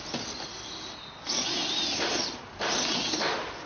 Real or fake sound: real